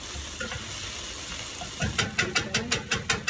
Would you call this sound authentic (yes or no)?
yes